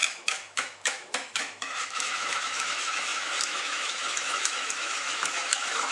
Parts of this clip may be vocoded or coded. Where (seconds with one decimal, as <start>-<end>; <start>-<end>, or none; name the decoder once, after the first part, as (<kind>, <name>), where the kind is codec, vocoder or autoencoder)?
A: 0.0-5.9 (autoencoder, DAC-VAE)